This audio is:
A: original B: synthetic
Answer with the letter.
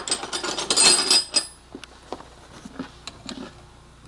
A